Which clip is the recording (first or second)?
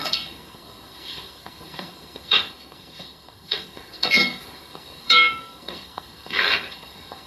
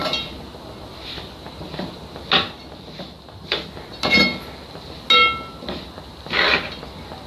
second